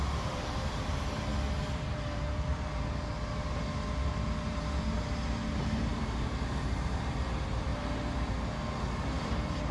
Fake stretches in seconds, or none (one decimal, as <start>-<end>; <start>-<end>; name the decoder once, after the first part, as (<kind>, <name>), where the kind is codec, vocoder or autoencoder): 0.0-1.3 (vocoder, BigVGAN v2); 5.5-7.7; 8.8-9.7